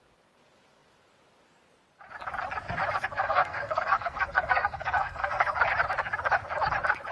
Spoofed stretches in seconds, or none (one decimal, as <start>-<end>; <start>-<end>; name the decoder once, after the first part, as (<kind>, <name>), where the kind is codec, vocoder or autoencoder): 3.2-5.6 (codec, SNAC)